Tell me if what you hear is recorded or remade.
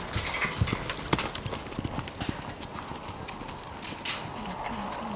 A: recorded